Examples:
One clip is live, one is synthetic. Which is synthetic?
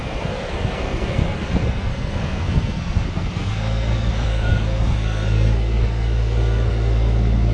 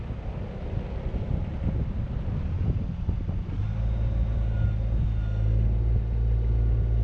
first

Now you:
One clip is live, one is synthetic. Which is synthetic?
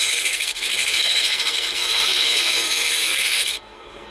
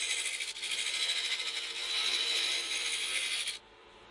first